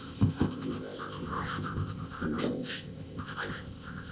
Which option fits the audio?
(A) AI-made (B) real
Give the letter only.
A